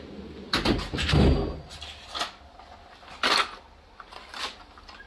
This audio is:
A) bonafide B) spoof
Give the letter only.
A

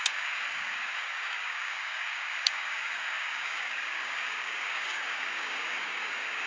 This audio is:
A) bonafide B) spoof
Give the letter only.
B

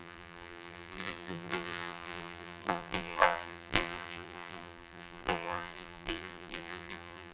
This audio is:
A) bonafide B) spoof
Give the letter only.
B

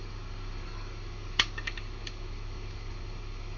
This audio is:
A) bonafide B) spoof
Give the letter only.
B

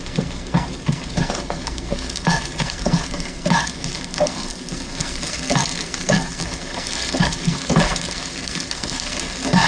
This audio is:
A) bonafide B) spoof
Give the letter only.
B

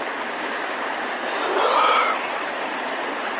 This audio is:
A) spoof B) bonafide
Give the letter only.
B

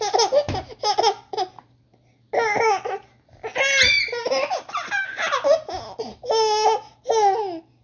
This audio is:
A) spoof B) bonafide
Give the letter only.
B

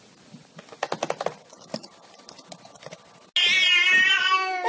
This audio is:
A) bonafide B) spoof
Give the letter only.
A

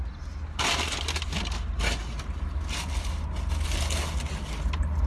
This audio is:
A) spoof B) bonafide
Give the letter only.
B